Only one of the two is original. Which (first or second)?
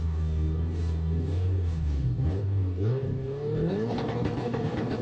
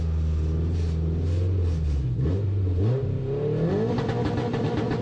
second